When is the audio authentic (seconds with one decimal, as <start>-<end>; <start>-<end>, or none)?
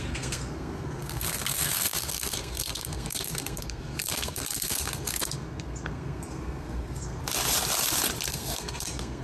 7.2-8.3